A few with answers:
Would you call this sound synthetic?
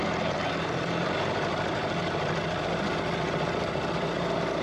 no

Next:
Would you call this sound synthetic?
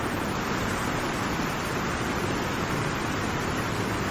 no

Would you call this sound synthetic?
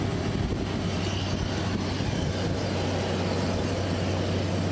no